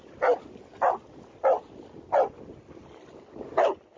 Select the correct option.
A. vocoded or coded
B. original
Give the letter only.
B